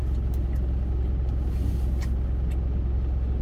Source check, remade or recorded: recorded